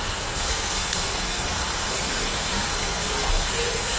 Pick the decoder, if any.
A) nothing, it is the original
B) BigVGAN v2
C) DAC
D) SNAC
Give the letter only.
D